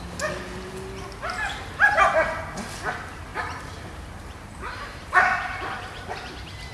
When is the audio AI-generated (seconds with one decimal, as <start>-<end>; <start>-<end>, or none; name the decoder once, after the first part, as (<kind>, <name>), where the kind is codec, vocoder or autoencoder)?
3.3-6.1 (vocoder, BigVGAN v2)